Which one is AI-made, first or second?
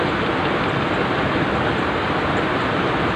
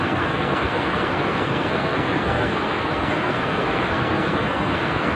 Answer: second